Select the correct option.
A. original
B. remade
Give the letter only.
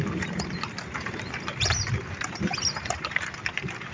B